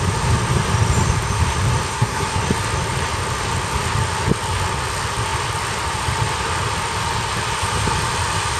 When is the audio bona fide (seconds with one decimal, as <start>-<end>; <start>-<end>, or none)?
0.0-1.9; 2.4-8.6